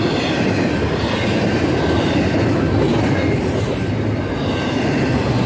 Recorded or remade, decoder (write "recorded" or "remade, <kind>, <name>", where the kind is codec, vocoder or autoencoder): recorded